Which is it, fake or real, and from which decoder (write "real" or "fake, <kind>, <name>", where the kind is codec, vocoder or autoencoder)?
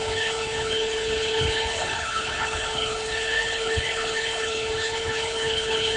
fake, codec, HILCodec